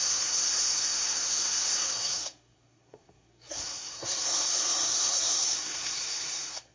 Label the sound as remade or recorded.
remade